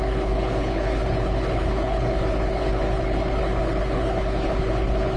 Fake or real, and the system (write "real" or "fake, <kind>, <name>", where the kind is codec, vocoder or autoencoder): fake, codec, HILCodec